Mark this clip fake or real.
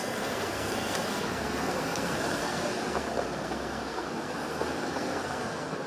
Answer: fake